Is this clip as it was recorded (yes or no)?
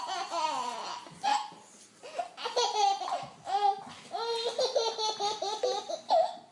yes